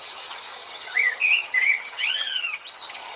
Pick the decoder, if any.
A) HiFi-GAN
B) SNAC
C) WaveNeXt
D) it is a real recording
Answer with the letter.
A